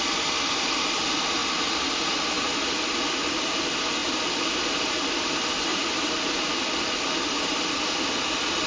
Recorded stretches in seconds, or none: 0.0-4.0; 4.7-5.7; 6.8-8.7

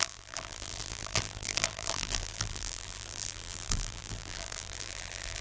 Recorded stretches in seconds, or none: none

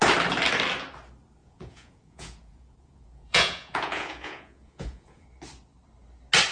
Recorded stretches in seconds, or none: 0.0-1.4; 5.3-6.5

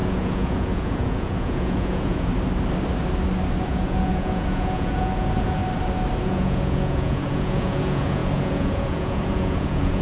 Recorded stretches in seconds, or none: 2.3-3.6; 5.6-6.2